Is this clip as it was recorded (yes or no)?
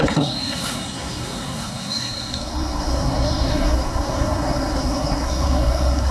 no